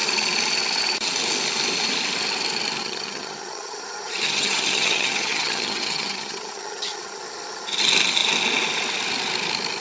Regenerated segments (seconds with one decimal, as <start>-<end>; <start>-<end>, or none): 2.8-7.2